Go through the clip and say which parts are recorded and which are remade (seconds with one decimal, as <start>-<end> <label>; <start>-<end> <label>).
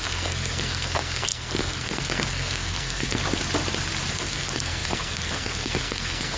0.0-3.2 remade; 3.2-4.1 recorded; 4.1-6.4 remade